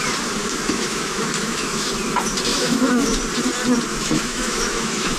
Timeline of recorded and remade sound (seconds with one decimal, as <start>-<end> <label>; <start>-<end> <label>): 0.0-0.4 recorded; 0.4-1.9 remade; 1.9-2.5 recorded; 2.5-3.2 remade; 3.2-3.9 recorded; 3.9-5.2 remade